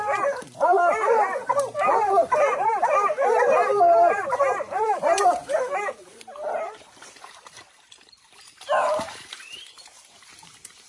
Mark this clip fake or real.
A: fake